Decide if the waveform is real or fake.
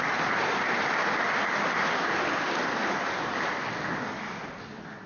real